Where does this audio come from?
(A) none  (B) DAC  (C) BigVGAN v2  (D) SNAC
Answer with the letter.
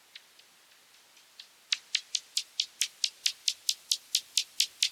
A